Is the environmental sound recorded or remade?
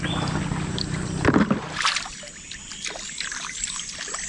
recorded